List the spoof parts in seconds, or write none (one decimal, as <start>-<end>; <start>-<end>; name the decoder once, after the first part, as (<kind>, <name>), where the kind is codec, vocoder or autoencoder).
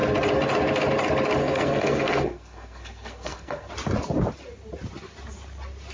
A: 1.4-3.7 (codec, SNAC)